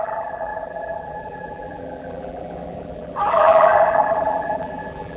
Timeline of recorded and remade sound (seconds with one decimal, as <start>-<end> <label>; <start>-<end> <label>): 0.0-5.2 remade